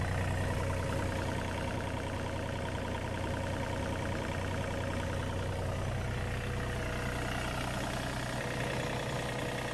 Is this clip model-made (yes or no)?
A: no